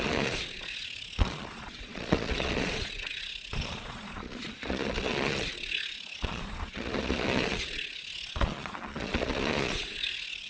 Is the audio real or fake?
fake